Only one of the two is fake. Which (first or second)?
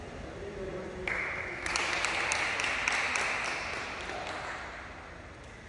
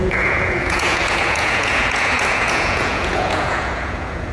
second